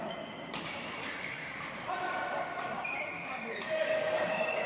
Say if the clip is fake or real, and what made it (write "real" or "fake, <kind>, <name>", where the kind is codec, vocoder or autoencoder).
fake, vocoder, BigVGAN v2